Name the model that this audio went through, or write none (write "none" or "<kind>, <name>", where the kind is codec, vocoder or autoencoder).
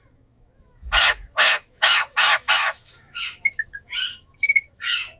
autoencoder, DAC-VAE